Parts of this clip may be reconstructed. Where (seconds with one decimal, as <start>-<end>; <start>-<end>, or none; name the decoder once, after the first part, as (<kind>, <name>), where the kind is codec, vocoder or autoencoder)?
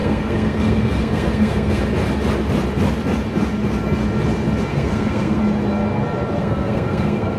0.0-1.8 (codec, SNAC); 4.7-5.4; 6.4-7.4